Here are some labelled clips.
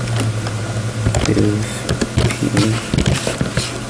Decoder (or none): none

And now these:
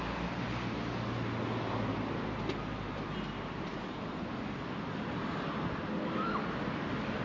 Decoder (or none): none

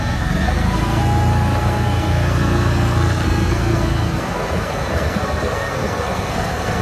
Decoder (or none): codec, SNAC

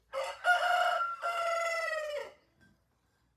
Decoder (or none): none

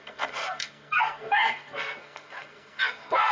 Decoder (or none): codec, SNAC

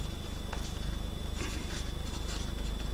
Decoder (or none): none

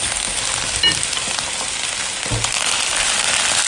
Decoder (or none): none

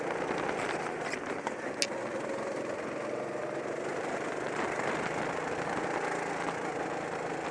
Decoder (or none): none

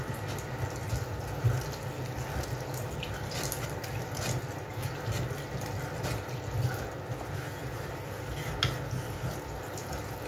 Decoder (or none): none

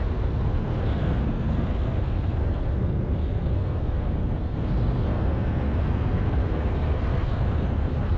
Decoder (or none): codec, SNAC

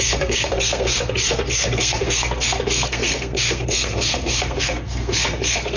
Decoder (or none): codec, SNAC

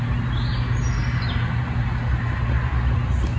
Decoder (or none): none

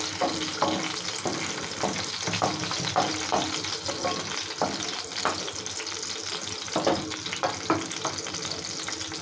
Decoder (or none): none